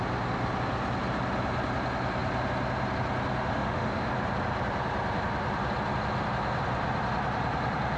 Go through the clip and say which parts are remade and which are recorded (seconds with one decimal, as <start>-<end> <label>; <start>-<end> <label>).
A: 0.0-3.5 recorded; 3.5-4.1 remade; 4.1-8.0 recorded